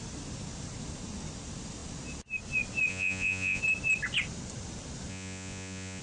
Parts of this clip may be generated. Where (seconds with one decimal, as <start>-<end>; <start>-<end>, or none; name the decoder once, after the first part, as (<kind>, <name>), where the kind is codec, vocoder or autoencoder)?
2.9-3.6 (vocoder, Vocos); 5.1-6.0